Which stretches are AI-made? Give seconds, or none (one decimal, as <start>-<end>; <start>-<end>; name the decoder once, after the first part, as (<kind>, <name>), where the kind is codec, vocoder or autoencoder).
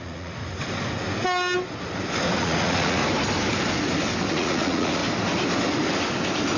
0.0-0.4 (vocoder, Vocos); 2.4-3.0; 4.3-5.0